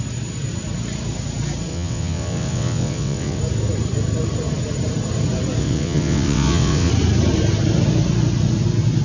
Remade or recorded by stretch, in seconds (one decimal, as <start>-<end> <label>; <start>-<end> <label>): 0.0-1.7 recorded; 1.7-3.4 remade; 3.4-5.6 recorded; 5.6-6.9 remade; 6.9-9.0 recorded